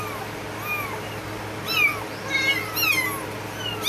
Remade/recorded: recorded